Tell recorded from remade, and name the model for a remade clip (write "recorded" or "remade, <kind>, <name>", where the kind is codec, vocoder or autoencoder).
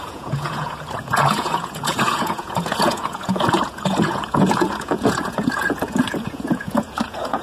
remade, vocoder, Vocos